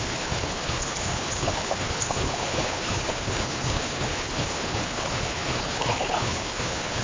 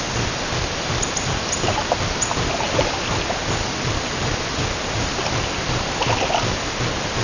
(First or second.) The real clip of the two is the second